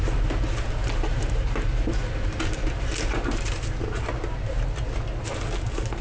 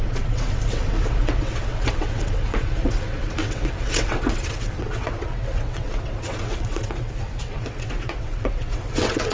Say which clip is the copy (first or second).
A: second